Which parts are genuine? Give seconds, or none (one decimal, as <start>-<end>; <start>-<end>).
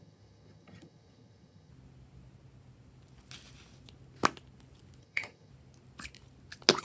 1.7-5.0; 5.5-6.8